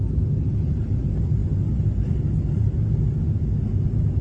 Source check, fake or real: real